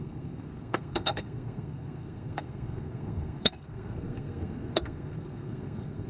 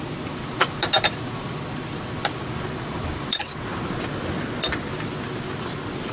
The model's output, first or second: first